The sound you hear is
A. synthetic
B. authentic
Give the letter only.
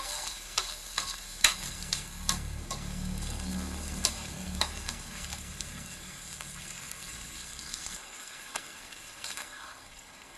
A